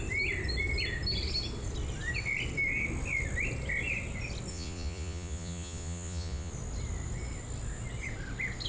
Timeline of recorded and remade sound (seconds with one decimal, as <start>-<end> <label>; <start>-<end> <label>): 0.0-4.5 recorded; 4.5-6.5 remade; 6.5-8.7 recorded